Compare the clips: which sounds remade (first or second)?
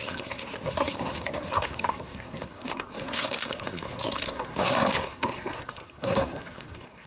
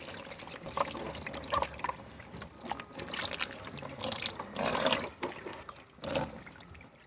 first